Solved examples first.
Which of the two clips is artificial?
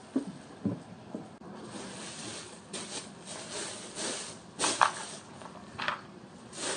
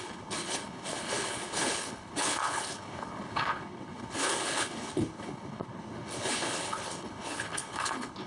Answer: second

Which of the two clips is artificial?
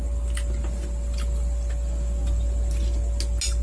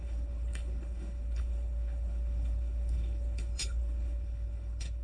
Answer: second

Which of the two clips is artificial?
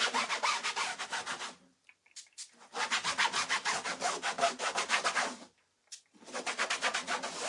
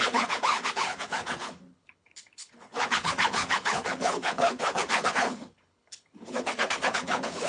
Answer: second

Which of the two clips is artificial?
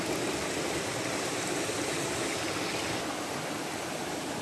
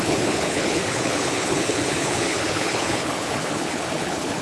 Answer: second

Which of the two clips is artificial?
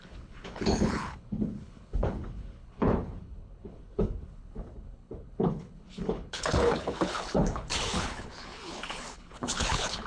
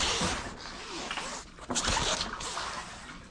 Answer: first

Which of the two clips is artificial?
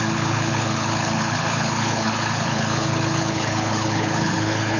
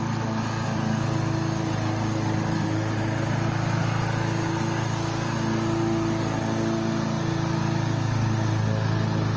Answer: first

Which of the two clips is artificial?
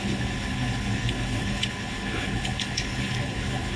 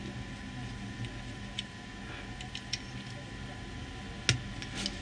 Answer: first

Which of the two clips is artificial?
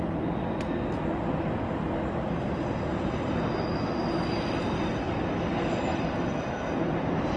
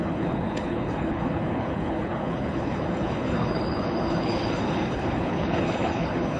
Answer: second